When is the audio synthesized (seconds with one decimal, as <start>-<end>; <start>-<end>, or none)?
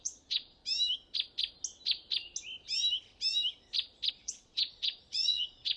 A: 0.0-0.6; 4.1-5.8